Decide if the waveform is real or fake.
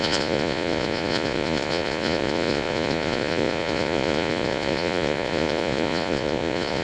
fake